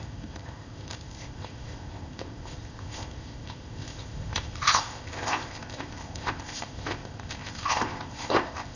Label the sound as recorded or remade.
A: remade